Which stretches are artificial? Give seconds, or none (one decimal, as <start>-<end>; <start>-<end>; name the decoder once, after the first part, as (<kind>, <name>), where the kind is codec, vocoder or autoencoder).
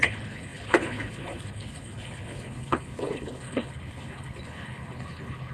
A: 0.0-5.5 (codec, HILCodec)